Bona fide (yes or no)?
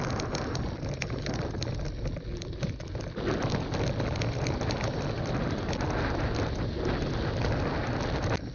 yes